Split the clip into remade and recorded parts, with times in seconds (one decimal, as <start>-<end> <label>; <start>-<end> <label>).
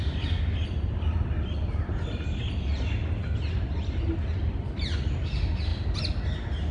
0.0-6.7 recorded